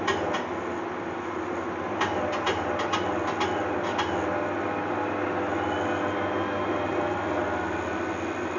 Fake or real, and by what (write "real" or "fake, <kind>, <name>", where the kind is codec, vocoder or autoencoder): real